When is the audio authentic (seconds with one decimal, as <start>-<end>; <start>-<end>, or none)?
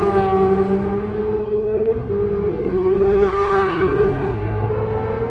0.0-1.4; 2.1-2.5; 4.7-5.3